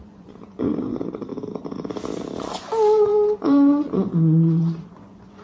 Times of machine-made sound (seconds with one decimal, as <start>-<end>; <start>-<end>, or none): 0.0-1.3; 2.4-5.4